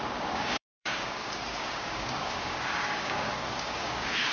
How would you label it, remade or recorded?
remade